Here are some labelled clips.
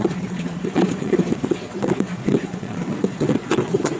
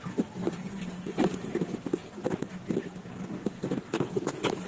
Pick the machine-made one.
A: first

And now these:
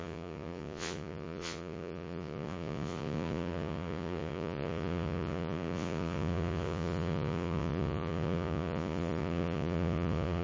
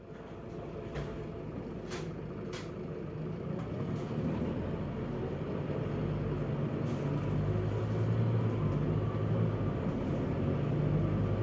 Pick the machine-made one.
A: first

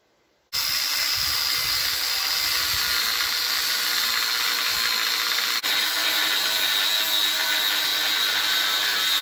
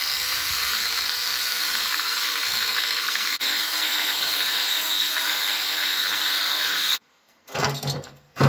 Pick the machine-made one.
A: second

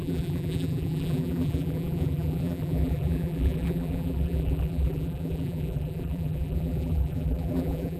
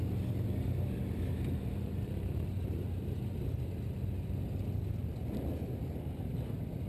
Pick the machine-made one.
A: first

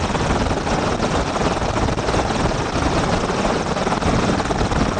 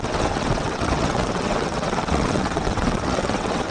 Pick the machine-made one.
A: second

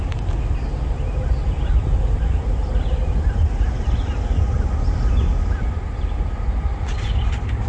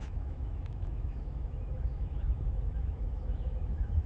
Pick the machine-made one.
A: second